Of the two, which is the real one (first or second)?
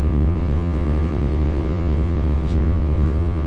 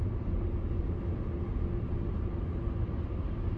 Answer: second